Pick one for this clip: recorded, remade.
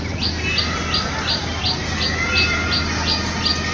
recorded